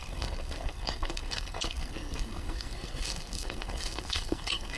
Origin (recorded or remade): remade